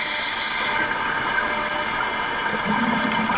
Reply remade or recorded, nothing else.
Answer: recorded